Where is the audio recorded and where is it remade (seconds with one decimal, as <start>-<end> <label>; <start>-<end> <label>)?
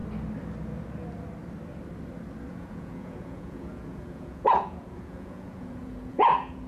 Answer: 0.0-2.5 recorded; 2.5-6.7 remade